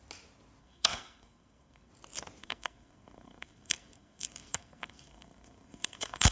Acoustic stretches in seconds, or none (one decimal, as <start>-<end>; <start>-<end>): 0.0-0.6; 1.9-2.4